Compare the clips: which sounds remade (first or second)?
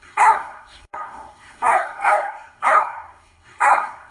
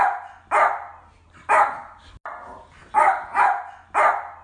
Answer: first